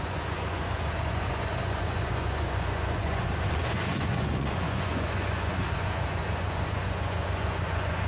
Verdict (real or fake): fake